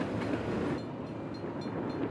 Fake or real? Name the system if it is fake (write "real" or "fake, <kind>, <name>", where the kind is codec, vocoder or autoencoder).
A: real